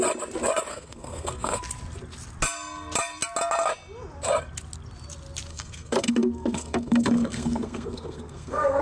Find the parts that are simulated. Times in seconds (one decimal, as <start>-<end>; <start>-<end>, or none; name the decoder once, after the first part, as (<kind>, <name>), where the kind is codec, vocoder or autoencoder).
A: 0.7-1.6 (codec, SNAC); 5.5-8.8